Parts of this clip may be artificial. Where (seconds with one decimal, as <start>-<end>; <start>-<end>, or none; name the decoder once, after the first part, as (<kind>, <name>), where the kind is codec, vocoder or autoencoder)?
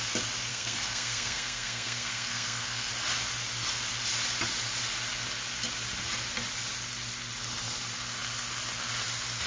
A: 0.5-2.9 (codec, SNAC)